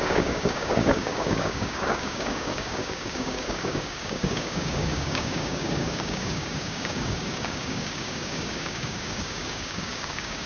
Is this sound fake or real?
fake